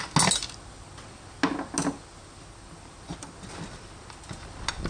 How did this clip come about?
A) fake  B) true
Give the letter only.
B